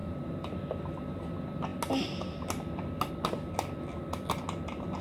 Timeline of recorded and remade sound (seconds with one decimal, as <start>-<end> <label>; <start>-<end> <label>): 0.0-0.9 remade; 0.9-5.0 recorded